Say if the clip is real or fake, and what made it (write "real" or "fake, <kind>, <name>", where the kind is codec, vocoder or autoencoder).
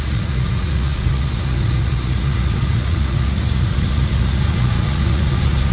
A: fake, vocoder, Vocos